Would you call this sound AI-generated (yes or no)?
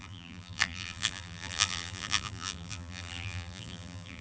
yes